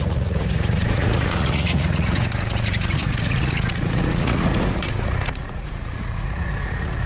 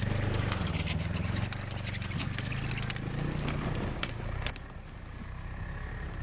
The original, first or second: second